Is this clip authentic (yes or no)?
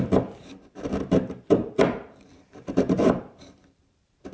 no